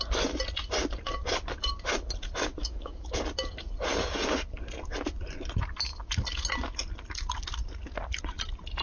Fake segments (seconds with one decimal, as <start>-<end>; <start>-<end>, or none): 2.6-3.2